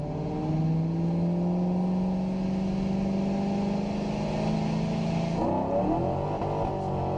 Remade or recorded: recorded